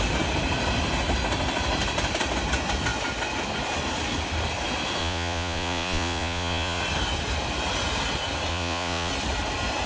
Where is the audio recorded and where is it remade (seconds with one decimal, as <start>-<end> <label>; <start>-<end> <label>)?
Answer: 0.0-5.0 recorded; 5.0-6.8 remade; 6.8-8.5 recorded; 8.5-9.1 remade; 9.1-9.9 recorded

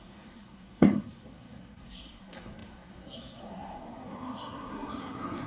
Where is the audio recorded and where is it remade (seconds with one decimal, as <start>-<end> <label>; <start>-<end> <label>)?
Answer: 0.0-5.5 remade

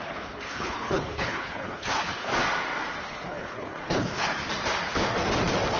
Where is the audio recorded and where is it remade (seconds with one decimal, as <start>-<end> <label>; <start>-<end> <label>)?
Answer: 0.0-2.3 remade; 2.3-3.0 recorded; 3.0-4.4 remade; 4.4-5.8 recorded

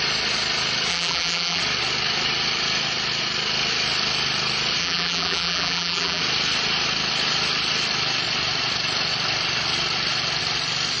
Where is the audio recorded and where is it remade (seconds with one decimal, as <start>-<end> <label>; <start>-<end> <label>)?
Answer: 0.0-0.9 recorded; 0.9-1.6 remade; 1.6-4.8 recorded; 4.8-6.2 remade; 6.2-11.0 recorded

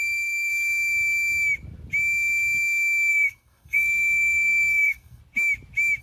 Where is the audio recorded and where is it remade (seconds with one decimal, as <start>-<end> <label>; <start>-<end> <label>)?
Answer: 0.0-0.5 remade; 0.5-3.1 recorded; 3.1-5.2 remade; 5.2-6.0 recorded